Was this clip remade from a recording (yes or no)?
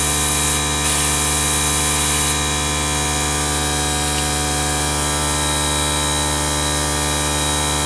no